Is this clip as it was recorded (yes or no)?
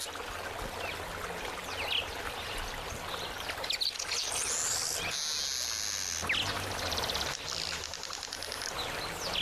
yes